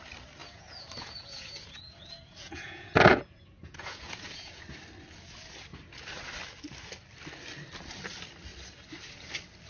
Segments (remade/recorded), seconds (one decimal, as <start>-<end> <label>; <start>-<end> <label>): 0.0-0.4 recorded; 0.4-4.6 remade; 4.6-9.7 recorded

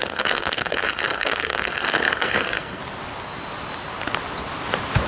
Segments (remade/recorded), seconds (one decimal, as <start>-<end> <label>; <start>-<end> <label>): 0.0-2.8 remade; 2.8-5.1 recorded